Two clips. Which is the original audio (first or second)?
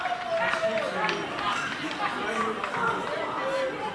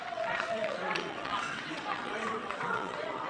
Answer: first